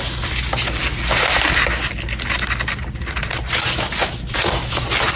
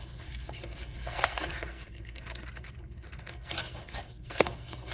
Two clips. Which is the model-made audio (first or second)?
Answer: second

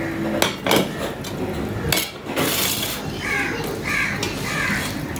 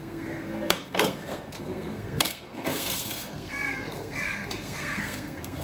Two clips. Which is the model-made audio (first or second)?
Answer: second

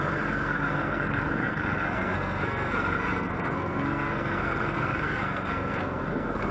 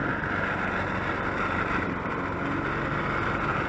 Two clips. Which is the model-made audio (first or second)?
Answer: first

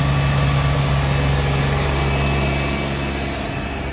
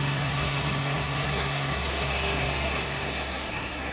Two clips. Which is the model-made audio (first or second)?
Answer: second